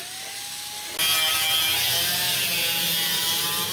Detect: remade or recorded recorded